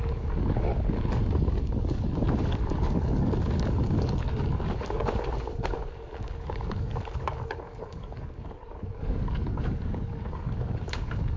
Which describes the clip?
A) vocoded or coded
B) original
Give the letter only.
A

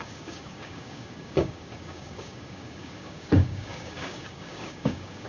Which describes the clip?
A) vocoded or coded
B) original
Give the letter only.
A